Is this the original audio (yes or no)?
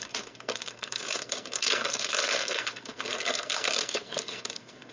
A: no